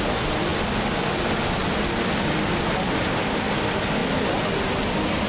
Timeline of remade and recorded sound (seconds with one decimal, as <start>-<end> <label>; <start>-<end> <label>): 0.0-5.3 recorded